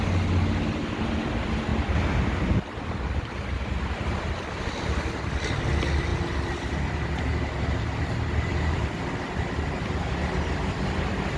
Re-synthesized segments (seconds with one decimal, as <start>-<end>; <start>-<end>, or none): none